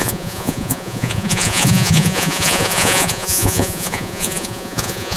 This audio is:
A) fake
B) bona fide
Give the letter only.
A